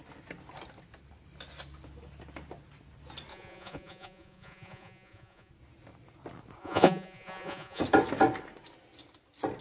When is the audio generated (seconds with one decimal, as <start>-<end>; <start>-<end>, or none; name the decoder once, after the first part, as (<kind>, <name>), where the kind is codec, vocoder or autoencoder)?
3.3-5.5 (vocoder, Vocos); 6.6-7.8

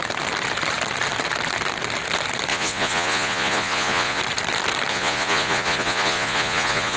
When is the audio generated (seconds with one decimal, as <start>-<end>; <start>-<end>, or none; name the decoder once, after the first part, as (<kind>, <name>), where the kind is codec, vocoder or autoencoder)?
2.5-4.2 (vocoder, Vocos); 4.9-7.0

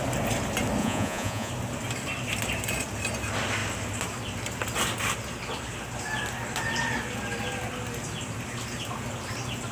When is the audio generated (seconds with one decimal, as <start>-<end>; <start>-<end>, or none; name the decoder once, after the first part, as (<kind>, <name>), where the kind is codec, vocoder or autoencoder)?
0.8-1.5 (vocoder, Vocos)

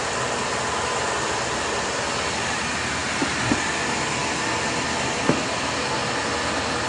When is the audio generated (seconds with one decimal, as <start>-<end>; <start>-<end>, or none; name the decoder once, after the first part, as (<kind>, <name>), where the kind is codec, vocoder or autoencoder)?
none

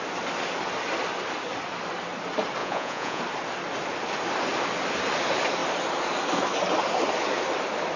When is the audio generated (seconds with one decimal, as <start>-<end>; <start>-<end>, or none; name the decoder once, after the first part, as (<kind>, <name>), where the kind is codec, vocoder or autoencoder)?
2.6-3.2 (vocoder, Vocos)

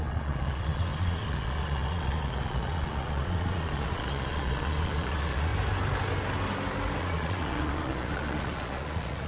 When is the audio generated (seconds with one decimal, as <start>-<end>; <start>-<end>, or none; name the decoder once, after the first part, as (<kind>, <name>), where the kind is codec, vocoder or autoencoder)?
0.0-5.5 (vocoder, Vocos); 7.0-9.3

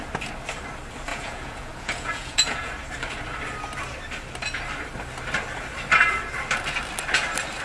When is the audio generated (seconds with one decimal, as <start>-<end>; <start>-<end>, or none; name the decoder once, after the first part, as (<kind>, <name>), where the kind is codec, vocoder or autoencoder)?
1.1-2.7 (vocoder, Vocos)